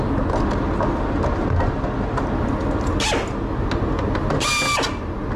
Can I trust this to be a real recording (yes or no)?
yes